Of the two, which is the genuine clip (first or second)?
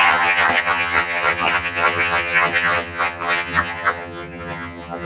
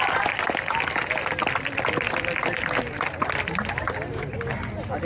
second